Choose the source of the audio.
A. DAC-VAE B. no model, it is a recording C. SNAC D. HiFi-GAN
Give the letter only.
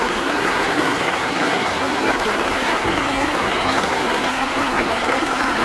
C